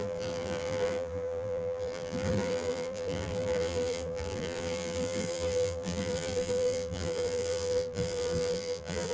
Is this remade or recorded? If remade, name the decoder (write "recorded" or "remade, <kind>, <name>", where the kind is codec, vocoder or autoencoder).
remade, vocoder, BigVGAN v2